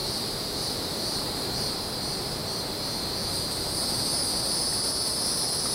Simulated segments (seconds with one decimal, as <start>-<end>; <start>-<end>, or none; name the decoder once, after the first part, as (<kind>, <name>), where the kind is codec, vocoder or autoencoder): 0.9-2.4 (vocoder, BigVGAN v2)